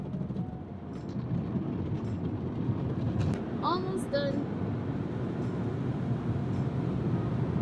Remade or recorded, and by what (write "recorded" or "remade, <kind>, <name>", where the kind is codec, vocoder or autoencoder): recorded